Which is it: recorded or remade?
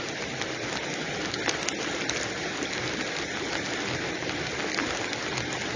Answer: recorded